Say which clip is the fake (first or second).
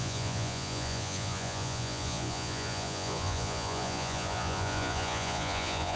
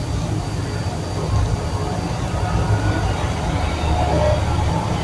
first